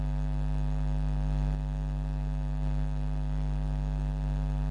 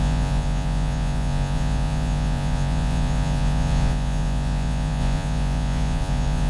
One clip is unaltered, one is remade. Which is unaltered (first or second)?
first